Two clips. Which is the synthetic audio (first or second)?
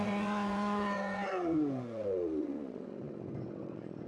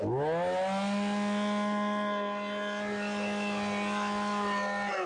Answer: first